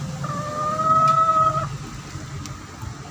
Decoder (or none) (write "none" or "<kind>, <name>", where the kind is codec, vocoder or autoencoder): none